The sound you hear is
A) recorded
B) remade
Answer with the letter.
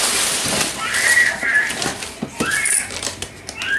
B